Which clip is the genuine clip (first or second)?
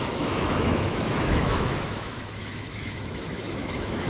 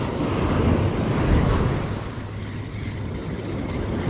second